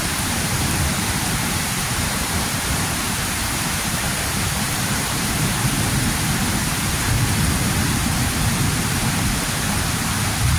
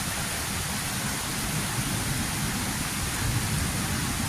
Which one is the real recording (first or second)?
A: second